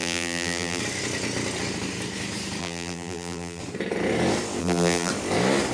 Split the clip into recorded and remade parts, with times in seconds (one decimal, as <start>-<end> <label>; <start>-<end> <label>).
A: 0.0-0.8 remade; 0.8-2.6 recorded; 2.6-3.6 remade; 3.6-4.6 recorded; 4.6-5.1 remade; 5.1-5.7 recorded

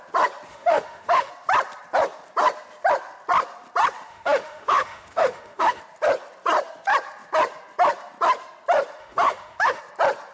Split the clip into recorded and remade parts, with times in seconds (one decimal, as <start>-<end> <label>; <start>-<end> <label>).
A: 0.0-0.5 recorded; 0.5-1.3 remade; 1.3-4.1 recorded; 4.1-5.8 remade; 5.8-9.0 recorded; 9.0-9.8 remade; 9.8-10.3 recorded